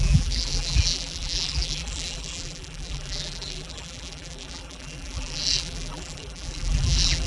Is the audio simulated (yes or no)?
yes